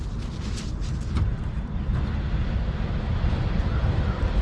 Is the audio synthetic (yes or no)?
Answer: no